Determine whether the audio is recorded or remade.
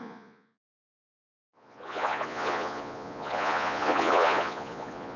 remade